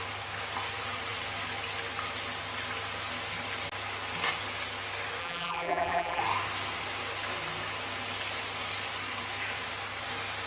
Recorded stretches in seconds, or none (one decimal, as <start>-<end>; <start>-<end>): 0.0-5.2; 6.2-10.5